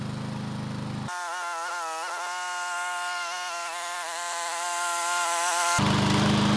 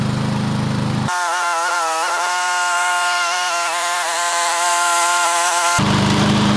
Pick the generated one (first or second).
second